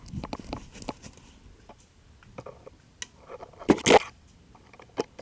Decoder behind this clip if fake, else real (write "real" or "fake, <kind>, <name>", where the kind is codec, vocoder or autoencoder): real